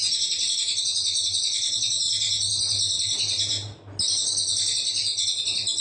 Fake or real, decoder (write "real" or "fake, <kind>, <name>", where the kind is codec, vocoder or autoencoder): real